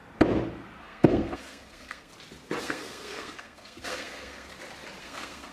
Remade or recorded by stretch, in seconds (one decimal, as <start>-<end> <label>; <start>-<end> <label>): 0.0-0.8 recorded; 0.8-2.1 remade; 2.1-2.6 recorded; 2.6-4.5 remade; 4.5-5.0 recorded; 5.0-5.5 remade